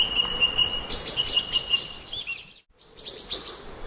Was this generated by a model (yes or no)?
no